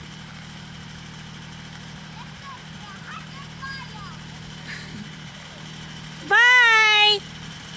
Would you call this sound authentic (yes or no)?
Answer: yes